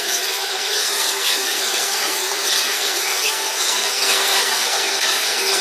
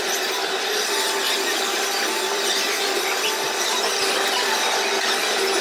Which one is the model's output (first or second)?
first